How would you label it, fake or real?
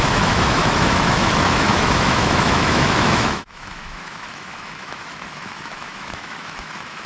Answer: fake